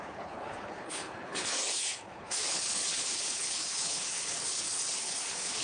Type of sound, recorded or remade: remade